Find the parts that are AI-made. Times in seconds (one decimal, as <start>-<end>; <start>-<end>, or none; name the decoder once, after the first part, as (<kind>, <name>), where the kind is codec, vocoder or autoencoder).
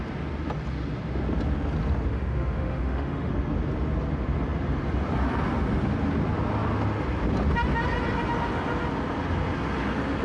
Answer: 2.1-3.3 (autoencoder, DAC-VAE)